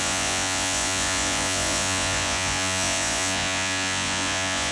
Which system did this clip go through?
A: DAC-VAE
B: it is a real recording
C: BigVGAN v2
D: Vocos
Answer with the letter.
D